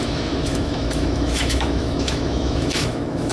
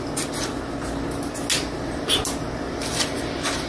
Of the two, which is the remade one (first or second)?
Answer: first